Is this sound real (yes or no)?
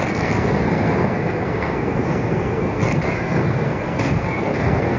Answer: no